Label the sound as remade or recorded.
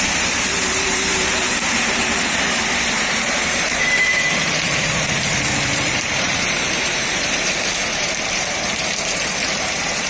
remade